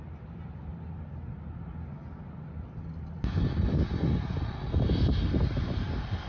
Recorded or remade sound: recorded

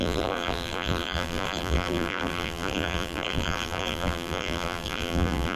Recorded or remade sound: remade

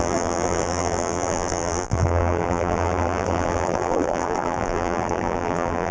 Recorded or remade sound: remade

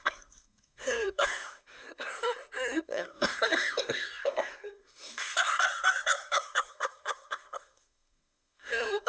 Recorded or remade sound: remade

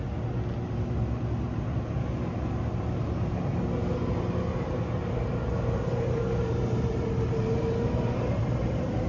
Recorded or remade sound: recorded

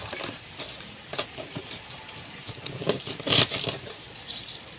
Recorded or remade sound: remade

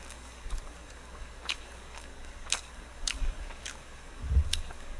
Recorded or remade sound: remade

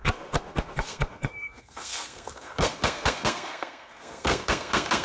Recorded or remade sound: remade